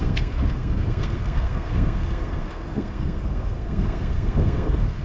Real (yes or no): no